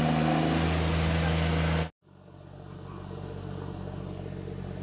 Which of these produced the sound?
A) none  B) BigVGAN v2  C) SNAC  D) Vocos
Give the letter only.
A